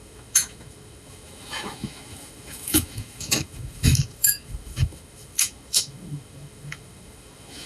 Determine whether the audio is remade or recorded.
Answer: remade